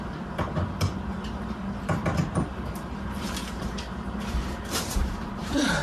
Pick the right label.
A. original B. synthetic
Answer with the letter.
B